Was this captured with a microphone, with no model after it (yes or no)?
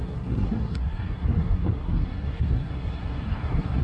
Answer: no